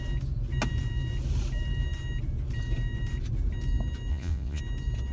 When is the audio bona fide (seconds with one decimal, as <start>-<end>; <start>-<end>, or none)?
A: 0.0-4.1; 4.6-5.1